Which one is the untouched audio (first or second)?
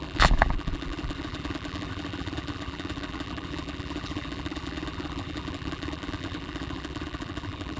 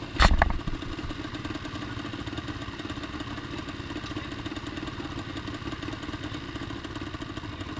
second